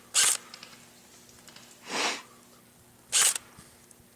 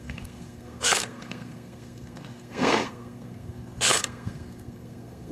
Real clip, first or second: first